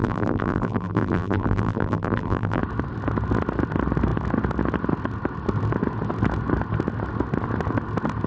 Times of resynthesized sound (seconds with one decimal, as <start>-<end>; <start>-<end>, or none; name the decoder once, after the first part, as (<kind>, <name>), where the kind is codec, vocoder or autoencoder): 0.0-2.6 (vocoder, BigVGAN v2)